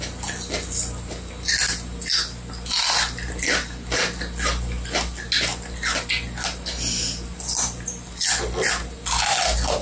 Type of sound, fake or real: real